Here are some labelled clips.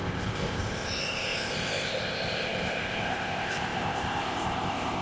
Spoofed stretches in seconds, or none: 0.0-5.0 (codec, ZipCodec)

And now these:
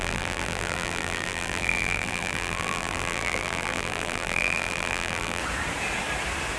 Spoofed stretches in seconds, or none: 0.0-5.4 (vocoder, BigVGAN v2)

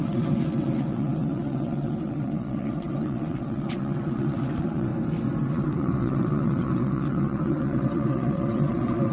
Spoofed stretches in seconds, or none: 0.0-4.9 (vocoder, WaveNeXt); 5.5-9.1

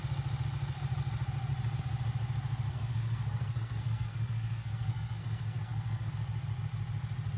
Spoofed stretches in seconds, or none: 2.7-6.1 (codec, SNAC)

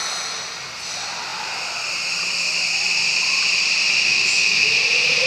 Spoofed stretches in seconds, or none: 4.1-4.7 (autoencoder, DAC-VAE)

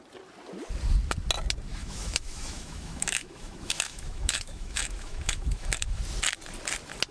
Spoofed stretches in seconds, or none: 1.7-6.0 (autoencoder, DAC-VAE)